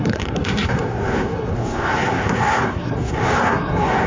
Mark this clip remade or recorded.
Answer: remade